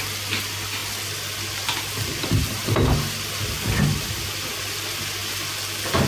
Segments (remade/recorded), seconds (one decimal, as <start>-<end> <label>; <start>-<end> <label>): 0.0-6.1 recorded